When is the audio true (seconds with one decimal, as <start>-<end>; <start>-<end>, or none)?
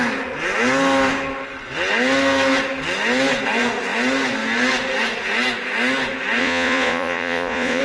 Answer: 0.0-6.4